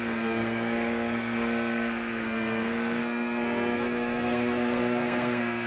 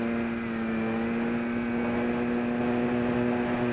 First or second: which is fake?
first